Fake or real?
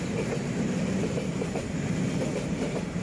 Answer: fake